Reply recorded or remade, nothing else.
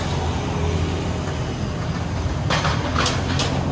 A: recorded